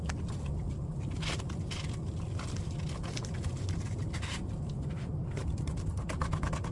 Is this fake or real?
real